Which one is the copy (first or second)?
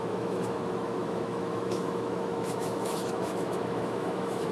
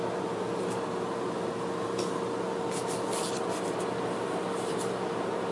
first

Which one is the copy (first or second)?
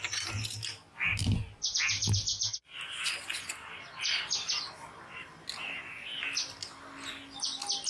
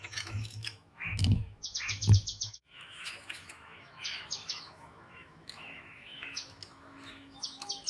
second